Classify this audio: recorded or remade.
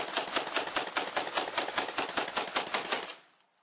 recorded